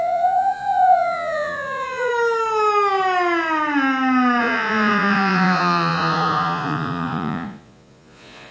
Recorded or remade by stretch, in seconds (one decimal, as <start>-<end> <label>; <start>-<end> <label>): 0.0-2.1 remade; 2.1-4.4 recorded; 4.4-8.5 remade